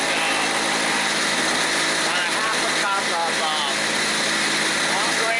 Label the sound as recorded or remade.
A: recorded